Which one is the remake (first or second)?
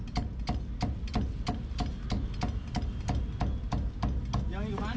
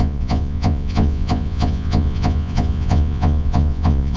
second